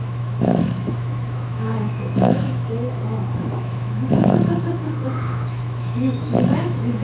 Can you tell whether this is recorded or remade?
remade